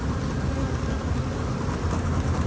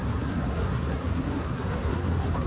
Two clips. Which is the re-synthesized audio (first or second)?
second